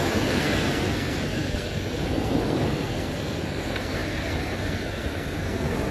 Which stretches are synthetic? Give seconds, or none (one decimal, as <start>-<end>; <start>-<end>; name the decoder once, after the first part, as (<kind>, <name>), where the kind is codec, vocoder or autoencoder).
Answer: 0.0-5.9 (codec, SNAC)